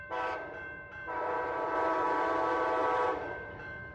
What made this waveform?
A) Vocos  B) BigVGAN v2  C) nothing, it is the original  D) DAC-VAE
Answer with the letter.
B